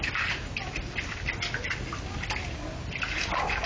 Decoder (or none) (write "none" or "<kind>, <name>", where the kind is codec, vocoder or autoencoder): none